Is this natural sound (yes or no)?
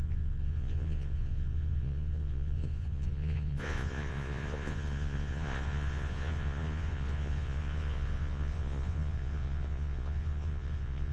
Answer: no